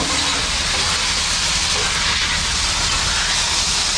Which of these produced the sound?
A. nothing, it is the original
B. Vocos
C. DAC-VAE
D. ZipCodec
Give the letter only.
A